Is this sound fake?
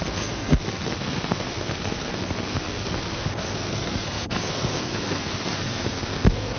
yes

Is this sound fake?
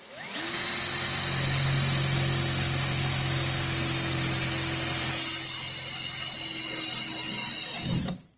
no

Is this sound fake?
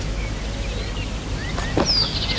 no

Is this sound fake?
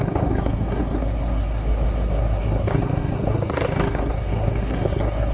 yes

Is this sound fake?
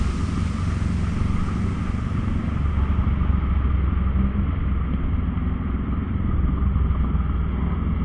no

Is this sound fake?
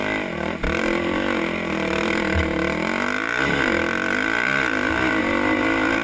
no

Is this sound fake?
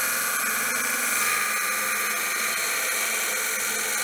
no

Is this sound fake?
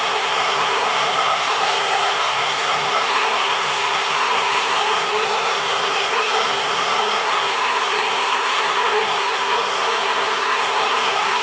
yes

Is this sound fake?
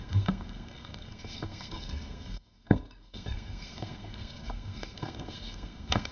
yes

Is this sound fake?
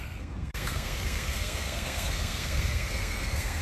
yes